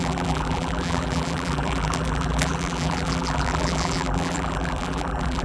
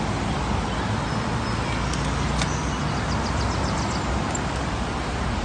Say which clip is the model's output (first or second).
first